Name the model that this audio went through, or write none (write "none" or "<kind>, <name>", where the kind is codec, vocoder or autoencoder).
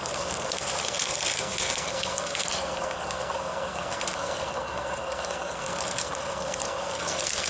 codec, SNAC